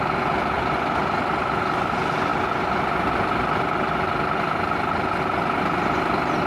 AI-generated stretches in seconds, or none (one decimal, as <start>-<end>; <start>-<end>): none